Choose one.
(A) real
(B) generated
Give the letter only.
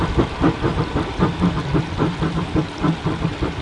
B